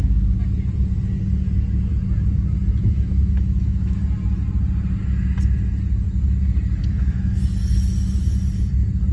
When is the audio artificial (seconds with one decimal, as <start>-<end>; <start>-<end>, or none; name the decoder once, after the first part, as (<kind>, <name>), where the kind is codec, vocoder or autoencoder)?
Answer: 2.8-4.0 (autoencoder, DAC-VAE); 6.8-7.4